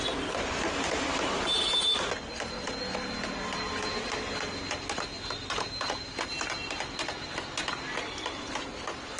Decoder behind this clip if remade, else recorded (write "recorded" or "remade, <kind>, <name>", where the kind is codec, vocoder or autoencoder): recorded